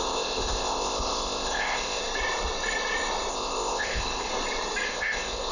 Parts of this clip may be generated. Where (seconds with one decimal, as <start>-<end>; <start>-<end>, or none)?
0.0-2.0; 3.3-4.3; 4.9-5.5